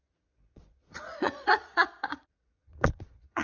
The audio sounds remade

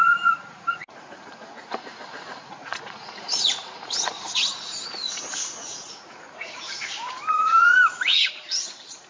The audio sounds remade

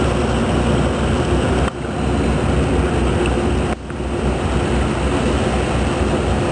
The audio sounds recorded